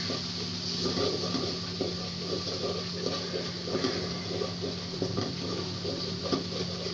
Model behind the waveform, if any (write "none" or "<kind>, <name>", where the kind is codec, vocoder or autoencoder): none